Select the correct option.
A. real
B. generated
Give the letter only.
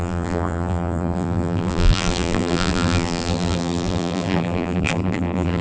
B